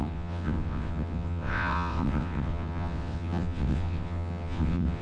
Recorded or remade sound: remade